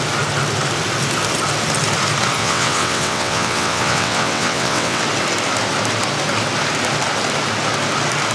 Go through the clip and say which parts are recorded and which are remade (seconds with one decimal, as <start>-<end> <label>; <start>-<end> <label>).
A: 0.0-2.4 recorded; 2.4-5.0 remade; 5.0-8.3 recorded